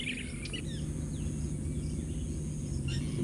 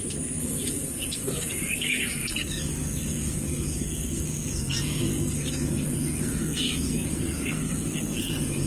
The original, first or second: first